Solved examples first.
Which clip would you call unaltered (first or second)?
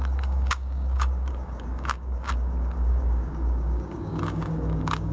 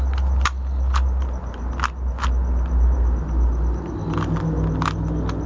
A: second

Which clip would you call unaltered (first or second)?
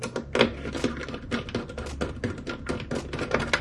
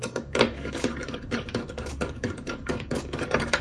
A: first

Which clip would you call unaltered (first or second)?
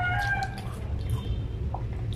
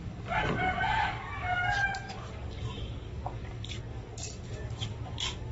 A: first